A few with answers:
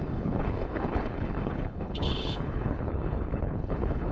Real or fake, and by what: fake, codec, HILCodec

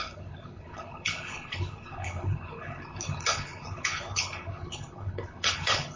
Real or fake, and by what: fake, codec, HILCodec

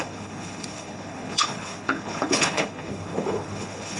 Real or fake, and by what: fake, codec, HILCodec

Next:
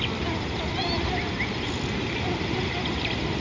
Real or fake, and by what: real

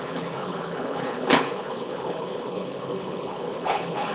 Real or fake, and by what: fake, codec, HILCodec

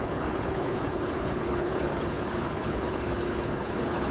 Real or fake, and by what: fake, codec, HILCodec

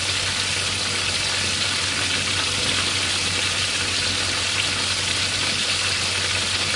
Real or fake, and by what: real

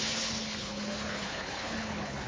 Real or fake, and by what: fake, codec, HILCodec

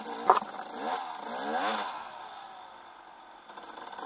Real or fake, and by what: real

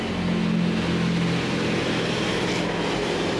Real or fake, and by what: real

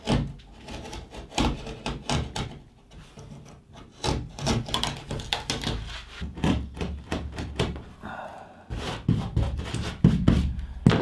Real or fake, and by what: real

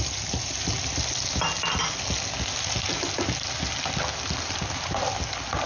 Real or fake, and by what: real